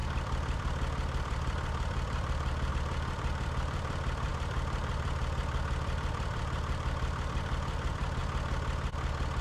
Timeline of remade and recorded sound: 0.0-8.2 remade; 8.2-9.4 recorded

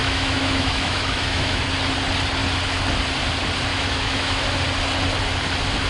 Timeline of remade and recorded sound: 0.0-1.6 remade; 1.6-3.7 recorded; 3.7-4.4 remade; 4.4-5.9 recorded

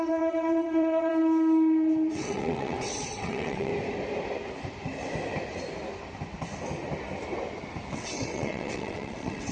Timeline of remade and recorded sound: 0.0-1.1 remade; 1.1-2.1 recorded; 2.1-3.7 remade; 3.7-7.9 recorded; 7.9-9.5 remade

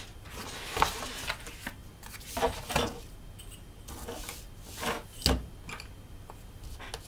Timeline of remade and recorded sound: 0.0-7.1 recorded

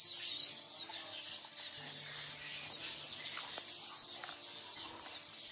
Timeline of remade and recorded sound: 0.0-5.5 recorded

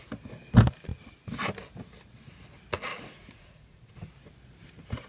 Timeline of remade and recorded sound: 0.0-2.9 recorded; 2.9-4.1 remade; 4.1-5.1 recorded

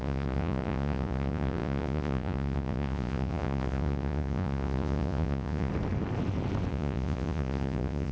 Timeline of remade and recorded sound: 0.0-5.7 remade; 5.7-6.7 recorded; 6.7-8.1 remade